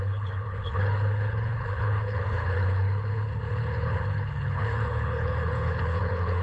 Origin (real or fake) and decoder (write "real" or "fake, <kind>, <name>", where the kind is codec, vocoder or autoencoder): fake, codec, HILCodec